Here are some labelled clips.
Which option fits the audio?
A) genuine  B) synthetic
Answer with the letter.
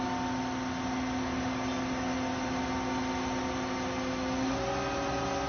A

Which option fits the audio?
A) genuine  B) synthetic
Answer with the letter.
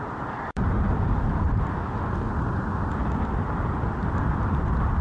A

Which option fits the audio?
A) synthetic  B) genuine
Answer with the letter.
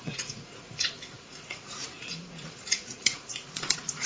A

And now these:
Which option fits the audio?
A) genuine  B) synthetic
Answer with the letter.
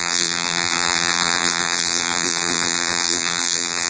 B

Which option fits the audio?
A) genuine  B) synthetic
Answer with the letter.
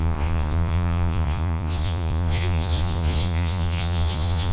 B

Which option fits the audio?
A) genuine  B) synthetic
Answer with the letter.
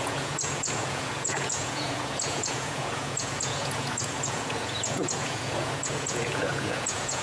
B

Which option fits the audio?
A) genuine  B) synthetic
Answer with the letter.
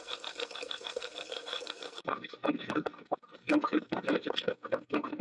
B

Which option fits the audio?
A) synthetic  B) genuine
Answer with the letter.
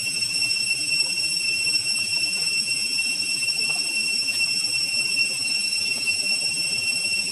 A